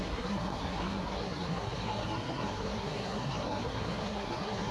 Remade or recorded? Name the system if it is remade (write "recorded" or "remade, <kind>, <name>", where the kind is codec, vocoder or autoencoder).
remade, codec, SNAC